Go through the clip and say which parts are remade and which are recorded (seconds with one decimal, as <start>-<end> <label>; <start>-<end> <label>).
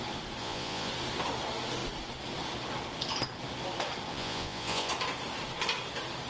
0.0-0.4 recorded; 0.4-0.9 remade; 0.9-4.1 recorded; 4.1-4.9 remade; 4.9-6.3 recorded